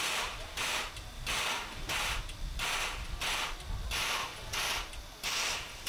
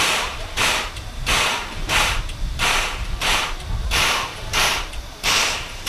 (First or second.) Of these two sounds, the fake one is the second